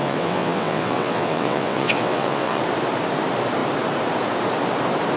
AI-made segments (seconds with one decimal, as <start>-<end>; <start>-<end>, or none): 0.0-2.6